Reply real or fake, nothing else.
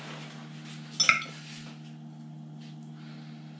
real